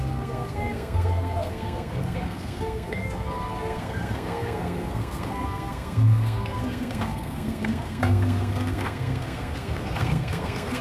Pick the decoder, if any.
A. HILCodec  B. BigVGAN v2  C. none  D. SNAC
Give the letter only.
D